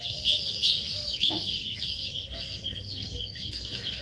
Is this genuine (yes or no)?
no